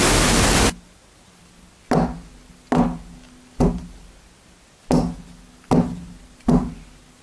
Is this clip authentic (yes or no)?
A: yes